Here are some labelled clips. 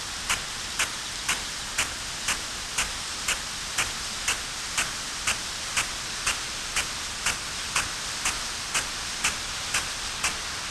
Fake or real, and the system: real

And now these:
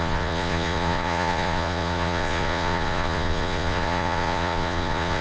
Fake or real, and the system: fake, vocoder, Vocos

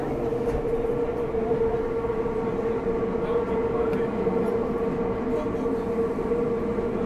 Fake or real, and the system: real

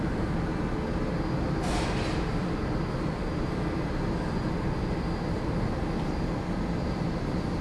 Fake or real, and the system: real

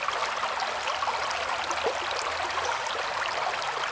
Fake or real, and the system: real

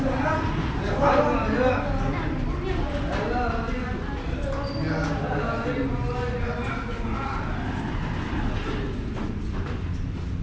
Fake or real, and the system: real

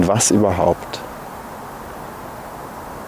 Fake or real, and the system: real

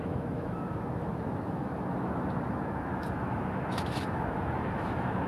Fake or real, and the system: fake, autoencoder, DAC-VAE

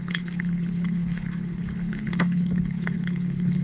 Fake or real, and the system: fake, codec, HILCodec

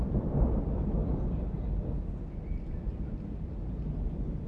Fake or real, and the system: real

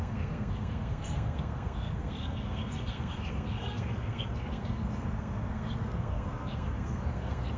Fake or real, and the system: fake, codec, SNAC